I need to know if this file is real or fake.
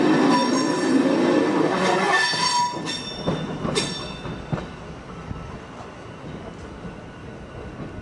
real